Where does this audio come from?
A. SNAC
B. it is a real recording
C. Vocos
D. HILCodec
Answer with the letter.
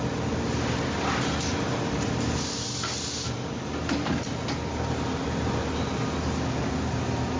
B